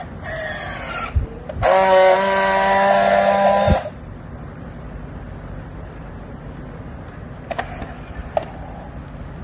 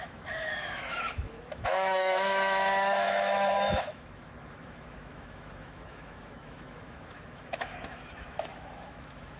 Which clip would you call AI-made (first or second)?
second